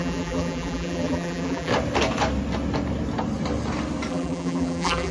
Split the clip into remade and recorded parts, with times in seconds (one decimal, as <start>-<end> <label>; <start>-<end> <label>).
0.0-1.7 remade; 1.7-4.1 recorded; 4.1-5.1 remade